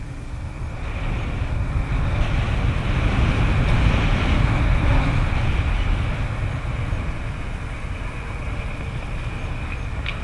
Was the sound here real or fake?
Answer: real